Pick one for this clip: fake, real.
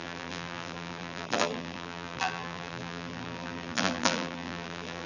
fake